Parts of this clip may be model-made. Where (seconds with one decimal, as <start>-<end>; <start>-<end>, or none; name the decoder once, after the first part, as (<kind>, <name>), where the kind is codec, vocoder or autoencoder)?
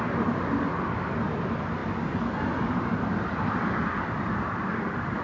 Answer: none